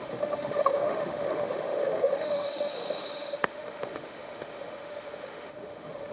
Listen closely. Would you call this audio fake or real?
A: fake